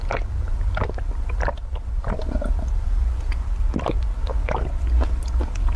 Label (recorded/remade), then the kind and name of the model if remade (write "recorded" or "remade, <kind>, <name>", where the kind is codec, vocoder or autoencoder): recorded